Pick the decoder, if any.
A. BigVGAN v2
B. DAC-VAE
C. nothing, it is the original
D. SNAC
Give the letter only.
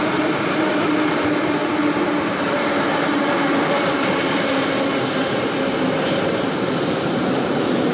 A